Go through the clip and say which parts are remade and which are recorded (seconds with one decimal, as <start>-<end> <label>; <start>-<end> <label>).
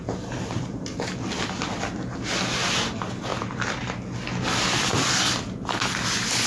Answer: 0.0-6.5 recorded